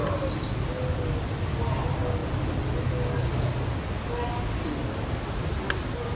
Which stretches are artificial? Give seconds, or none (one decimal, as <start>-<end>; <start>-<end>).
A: none